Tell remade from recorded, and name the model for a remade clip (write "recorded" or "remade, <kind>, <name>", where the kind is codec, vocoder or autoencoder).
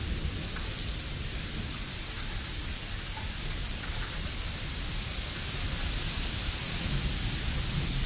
recorded